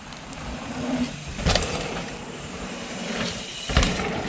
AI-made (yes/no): yes